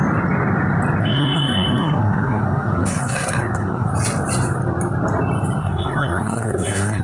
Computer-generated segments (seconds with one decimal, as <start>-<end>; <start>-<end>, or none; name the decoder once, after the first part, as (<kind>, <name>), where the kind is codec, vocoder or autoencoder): 1.0-3.9 (codec, SNAC); 5.6-7.0